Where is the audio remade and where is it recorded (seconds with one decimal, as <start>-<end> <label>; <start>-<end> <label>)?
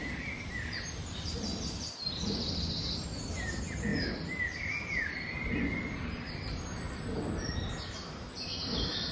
0.0-9.1 recorded